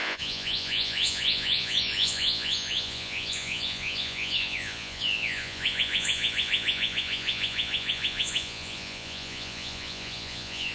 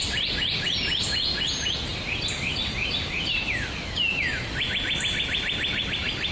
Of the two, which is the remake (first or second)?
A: first